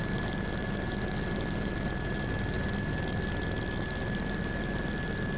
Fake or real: real